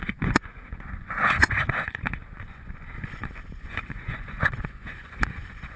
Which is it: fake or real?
fake